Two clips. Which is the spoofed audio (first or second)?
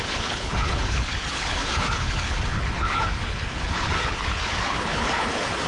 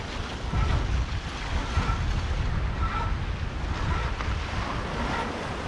first